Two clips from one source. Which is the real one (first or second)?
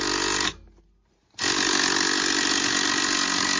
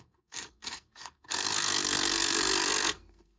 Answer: first